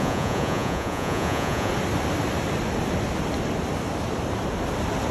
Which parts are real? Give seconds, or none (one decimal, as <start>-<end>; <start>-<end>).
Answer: 1.7-5.1